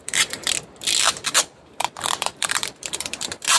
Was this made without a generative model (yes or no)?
no